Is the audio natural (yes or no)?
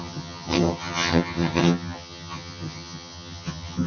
no